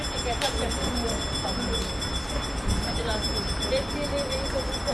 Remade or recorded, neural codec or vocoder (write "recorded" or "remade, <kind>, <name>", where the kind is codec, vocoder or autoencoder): recorded